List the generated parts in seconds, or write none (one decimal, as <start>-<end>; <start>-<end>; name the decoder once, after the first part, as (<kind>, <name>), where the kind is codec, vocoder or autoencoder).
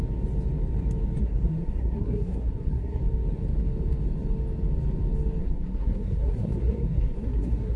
1.2-3.0 (codec, SNAC); 5.4-7.8